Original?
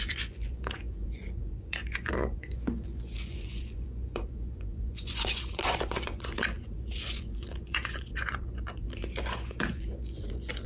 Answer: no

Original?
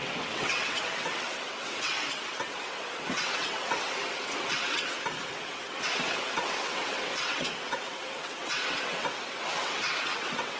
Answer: no